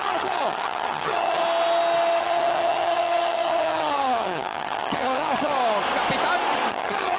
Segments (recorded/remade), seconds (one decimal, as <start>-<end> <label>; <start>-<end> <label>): 0.0-1.4 remade; 1.4-2.2 recorded; 2.2-5.5 remade; 5.5-6.7 recorded; 6.7-7.2 remade